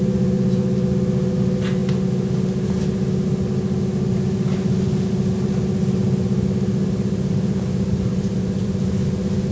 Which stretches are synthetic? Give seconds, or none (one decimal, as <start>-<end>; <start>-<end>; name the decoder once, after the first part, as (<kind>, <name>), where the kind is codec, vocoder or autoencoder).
none